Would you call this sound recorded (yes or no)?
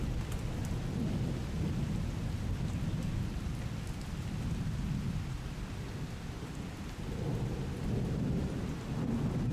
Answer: yes